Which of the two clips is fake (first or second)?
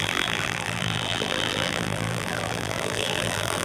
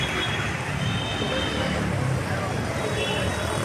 first